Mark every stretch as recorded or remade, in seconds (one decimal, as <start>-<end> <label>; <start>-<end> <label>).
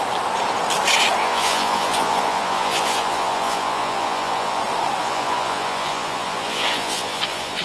0.0-1.2 recorded; 1.2-4.6 remade; 4.6-5.0 recorded; 5.0-7.6 remade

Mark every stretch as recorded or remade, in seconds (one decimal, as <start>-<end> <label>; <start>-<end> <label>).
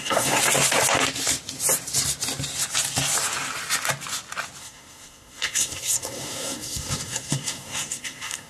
0.0-0.4 remade; 0.4-4.6 recorded; 4.6-8.5 remade